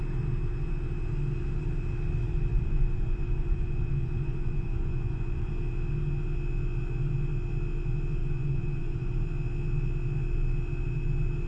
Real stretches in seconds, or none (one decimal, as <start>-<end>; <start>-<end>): 0.0-2.5; 5.5-8.2; 9.2-11.5